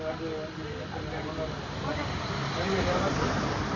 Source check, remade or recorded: recorded